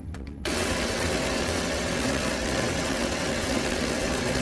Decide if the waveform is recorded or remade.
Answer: remade